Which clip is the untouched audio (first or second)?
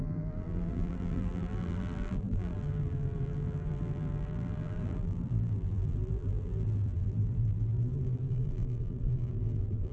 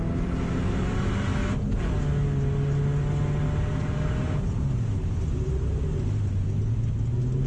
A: second